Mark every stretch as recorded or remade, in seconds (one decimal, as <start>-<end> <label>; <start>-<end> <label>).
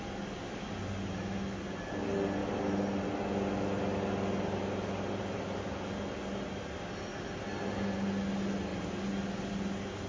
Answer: 0.0-10.1 recorded